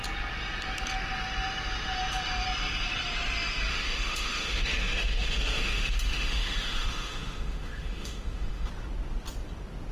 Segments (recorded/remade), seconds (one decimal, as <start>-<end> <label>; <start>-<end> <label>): 0.0-3.7 recorded; 3.7-8.7 remade; 8.7-9.9 recorded